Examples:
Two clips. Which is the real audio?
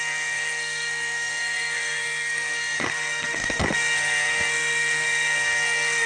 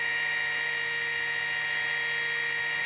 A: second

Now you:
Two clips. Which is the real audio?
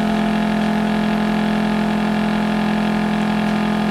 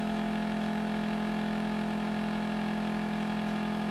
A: first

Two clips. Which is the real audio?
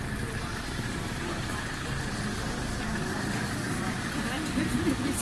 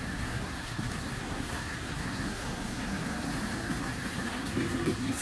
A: first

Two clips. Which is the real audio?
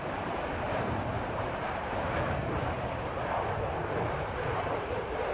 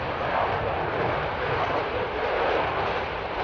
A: second